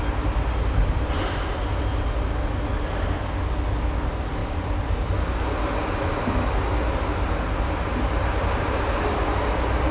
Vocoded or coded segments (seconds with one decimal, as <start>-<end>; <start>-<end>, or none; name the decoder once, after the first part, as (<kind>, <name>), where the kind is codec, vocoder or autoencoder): none